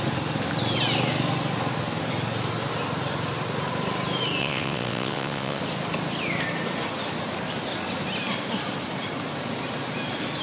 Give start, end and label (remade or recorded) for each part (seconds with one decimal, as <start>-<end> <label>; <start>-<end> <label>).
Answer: 0.0-4.4 recorded; 4.4-5.6 remade; 5.6-10.4 recorded